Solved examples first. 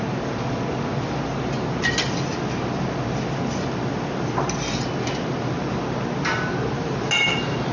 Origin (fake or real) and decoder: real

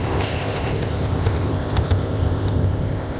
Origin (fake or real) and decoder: fake, codec, ZipCodec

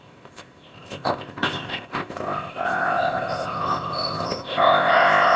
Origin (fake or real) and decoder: fake, codec, ZipCodec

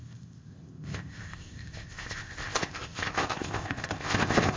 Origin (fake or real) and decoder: fake, codec, ZipCodec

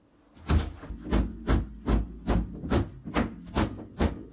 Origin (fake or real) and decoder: real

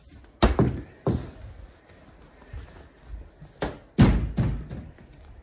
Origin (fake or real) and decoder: real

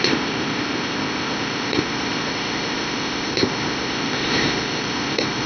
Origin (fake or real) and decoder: fake, codec, ZipCodec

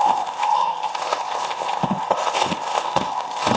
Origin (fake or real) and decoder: fake, codec, ZipCodec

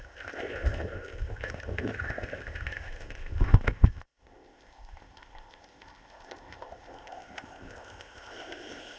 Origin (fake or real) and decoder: fake, codec, ZipCodec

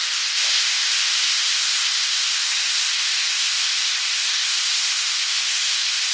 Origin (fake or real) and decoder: fake, codec, ZipCodec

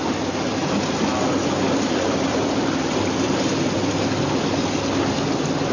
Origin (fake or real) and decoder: real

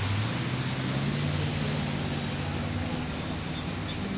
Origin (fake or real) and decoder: real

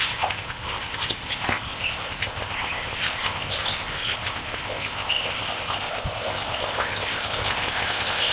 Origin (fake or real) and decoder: fake, codec, ZipCodec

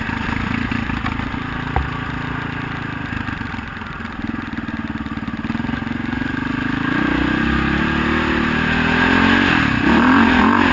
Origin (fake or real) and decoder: real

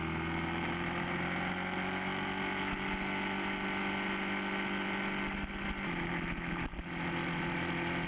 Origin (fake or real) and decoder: real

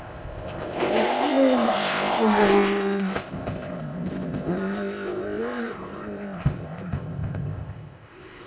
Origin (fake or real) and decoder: fake, codec, ZipCodec